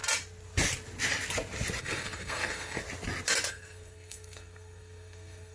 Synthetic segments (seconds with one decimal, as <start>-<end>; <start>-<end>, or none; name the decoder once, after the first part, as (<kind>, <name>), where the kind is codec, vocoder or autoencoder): 1.8-2.8 (codec, SNAC); 3.5-5.5

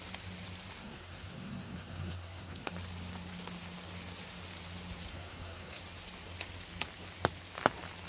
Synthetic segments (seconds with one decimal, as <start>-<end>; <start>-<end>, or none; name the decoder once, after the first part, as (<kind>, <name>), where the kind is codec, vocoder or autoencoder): 0.8-2.7 (codec, SNAC); 5.1-5.8

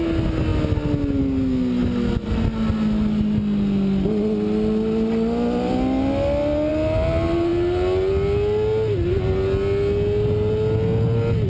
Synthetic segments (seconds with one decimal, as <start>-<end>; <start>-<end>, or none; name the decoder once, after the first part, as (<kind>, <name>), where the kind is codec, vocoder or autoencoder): none

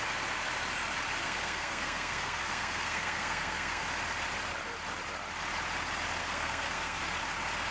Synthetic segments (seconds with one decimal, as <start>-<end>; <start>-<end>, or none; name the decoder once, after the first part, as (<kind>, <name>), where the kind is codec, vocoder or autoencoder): 1.2-3.8 (codec, SNAC); 6.2-7.0